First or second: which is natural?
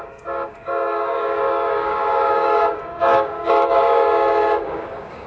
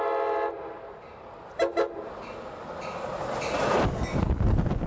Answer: second